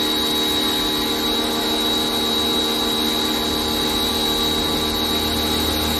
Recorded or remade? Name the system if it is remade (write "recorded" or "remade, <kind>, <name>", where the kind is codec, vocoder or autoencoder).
recorded